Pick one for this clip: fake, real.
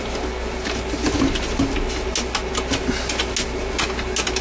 real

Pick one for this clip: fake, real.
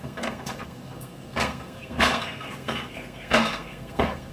fake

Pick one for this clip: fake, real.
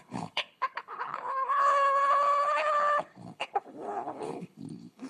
fake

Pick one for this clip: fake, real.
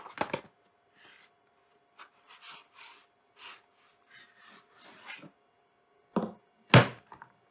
real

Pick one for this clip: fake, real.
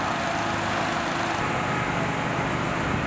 real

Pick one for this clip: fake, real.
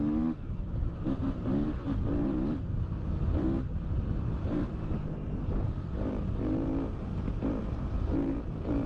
fake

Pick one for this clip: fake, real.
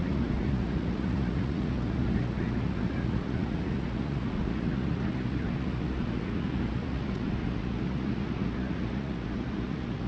fake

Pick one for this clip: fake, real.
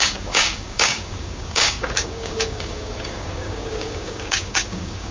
fake